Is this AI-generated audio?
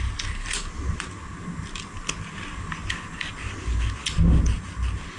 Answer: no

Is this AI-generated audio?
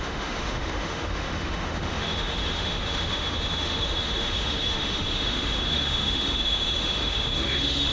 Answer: yes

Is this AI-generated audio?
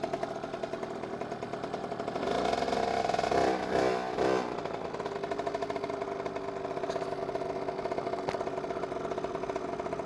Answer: no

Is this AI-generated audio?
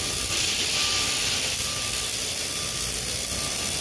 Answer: no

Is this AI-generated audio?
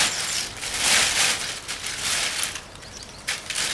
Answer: no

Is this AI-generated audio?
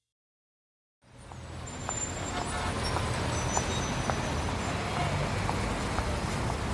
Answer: no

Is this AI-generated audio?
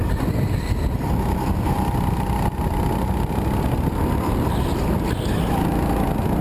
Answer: no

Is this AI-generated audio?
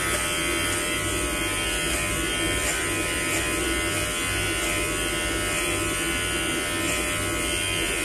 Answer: no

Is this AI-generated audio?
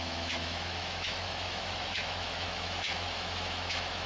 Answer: yes